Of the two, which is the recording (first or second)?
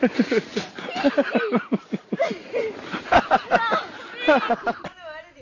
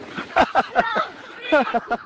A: first